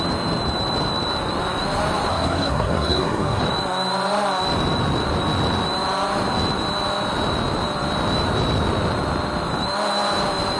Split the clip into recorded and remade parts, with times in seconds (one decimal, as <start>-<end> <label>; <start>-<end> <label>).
0.0-2.1 recorded; 2.1-3.4 remade; 3.4-10.6 recorded